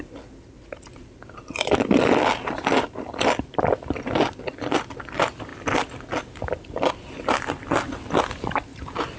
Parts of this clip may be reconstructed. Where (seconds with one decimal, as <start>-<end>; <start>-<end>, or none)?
none